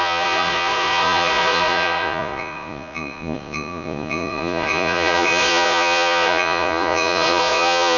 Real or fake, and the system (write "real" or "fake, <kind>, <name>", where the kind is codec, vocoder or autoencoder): fake, vocoder, Vocos